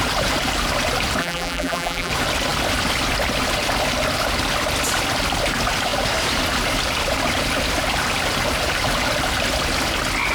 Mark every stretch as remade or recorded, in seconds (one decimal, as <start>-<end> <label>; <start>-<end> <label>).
0.0-1.2 recorded; 1.2-2.1 remade; 2.1-10.3 recorded